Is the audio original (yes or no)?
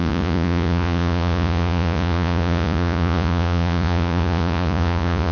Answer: no